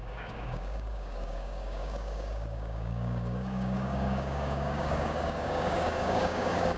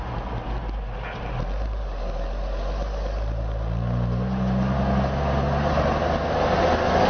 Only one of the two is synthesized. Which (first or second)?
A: first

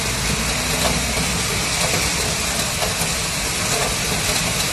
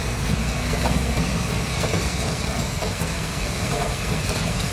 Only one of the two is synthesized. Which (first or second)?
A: second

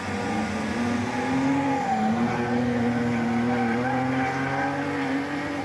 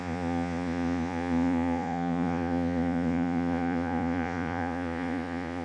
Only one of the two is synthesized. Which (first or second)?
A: second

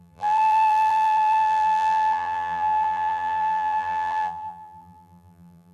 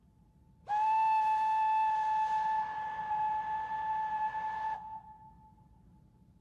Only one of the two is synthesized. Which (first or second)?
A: first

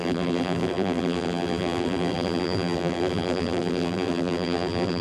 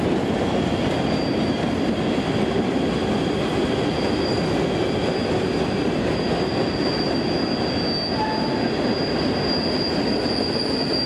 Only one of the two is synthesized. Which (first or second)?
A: first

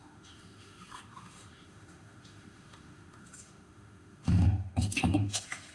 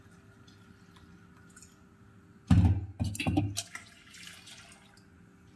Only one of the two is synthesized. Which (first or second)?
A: first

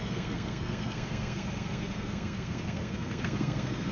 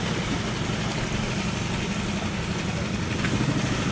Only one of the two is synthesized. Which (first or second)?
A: first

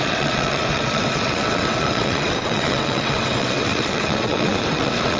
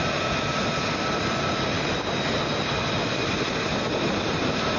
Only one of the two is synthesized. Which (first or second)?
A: first